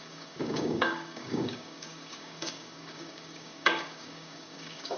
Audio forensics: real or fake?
fake